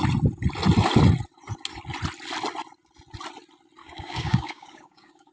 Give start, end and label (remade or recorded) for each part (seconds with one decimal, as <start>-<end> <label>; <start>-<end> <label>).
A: 0.0-3.8 recorded; 3.8-5.3 remade